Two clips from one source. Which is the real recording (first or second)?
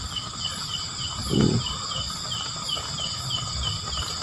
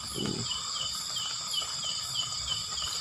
first